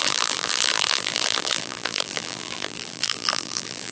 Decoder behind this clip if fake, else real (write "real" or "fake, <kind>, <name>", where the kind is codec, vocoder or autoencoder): fake, vocoder, BigVGAN v2